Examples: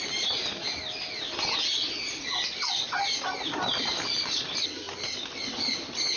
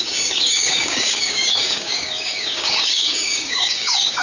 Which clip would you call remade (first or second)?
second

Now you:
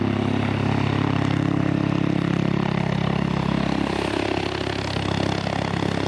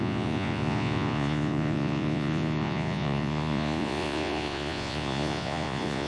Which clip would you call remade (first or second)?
second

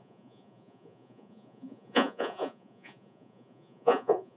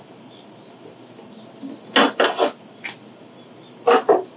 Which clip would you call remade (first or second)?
first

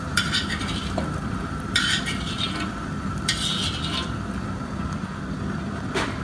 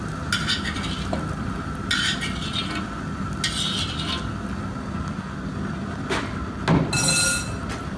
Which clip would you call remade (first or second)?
first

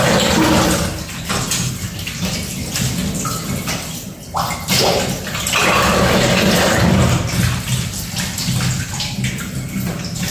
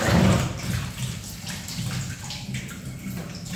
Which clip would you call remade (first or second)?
second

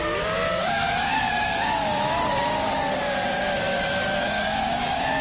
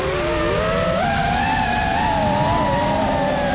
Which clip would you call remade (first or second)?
first